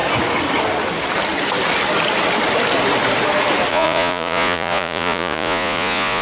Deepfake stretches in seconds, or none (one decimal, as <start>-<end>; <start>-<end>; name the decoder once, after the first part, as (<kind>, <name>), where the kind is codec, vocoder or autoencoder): 3.7-6.2 (vocoder, Vocos)